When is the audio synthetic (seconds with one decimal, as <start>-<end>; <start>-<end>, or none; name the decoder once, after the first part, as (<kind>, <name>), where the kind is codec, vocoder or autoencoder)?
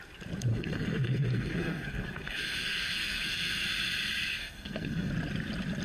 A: 0.5-3.5 (codec, SNAC); 4.4-5.1